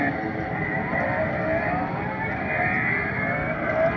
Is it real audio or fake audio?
real